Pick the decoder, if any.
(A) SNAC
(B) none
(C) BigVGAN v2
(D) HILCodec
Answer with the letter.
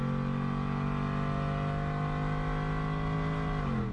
B